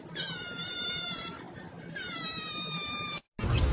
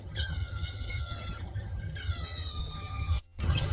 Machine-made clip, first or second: second